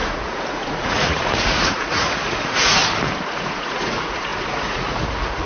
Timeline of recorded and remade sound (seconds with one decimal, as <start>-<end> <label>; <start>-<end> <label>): 0.0-2.8 remade; 2.8-3.3 recorded; 3.3-5.5 remade